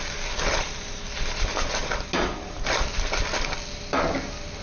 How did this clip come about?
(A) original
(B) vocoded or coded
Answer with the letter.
A